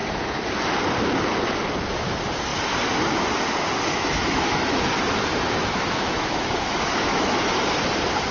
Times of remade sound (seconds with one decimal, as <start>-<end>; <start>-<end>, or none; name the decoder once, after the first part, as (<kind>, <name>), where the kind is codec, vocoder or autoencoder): 3.9-4.8 (autoencoder, DAC-VAE); 5.3-7.6